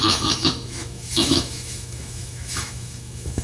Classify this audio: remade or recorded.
remade